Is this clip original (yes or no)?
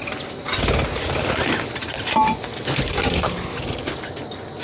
yes